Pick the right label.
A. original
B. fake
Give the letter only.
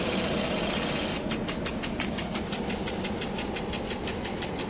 A